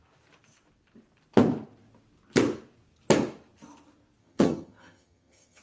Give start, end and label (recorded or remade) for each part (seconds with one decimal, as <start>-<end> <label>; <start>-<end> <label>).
0.0-4.2 recorded; 4.2-5.6 remade